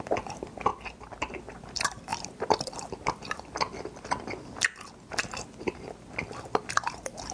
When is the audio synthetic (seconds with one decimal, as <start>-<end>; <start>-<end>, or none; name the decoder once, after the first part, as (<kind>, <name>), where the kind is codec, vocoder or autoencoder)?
0.0-7.3 (vocoder, BigVGAN v2)